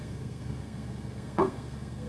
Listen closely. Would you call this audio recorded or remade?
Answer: remade